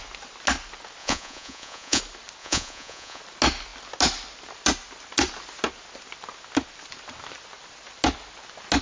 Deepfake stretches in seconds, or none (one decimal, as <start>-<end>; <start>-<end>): 1.0-2.0; 2.4-3.2